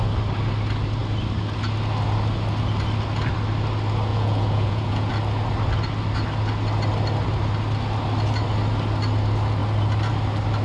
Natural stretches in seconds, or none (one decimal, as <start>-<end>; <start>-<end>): 0.0-4.1; 5.1-10.6